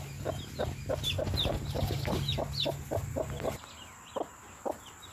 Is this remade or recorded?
recorded